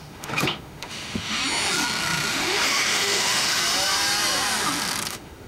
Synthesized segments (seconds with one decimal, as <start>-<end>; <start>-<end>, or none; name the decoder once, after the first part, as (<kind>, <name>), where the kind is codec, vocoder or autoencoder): 0.0-1.4 (autoencoder, DAC-VAE); 2.3-3.6; 5.1-5.5